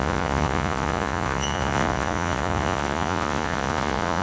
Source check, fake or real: fake